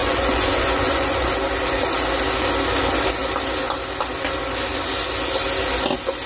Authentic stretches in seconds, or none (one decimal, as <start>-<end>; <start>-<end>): 1.3-6.3